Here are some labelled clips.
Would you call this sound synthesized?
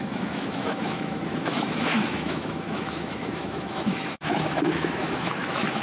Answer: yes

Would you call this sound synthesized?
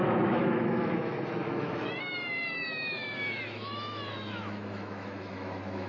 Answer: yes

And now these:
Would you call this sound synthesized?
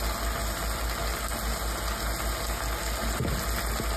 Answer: no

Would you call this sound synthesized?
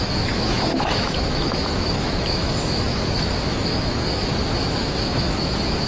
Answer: yes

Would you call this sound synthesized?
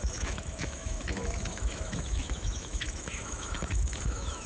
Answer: yes